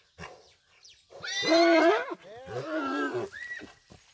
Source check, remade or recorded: recorded